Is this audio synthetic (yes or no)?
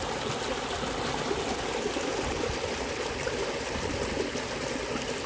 no